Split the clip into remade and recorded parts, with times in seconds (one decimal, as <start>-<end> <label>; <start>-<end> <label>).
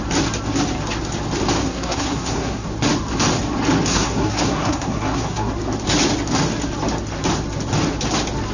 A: 0.0-1.6 recorded; 1.6-2.7 remade; 2.7-3.9 recorded; 3.9-5.5 remade; 5.5-8.5 recorded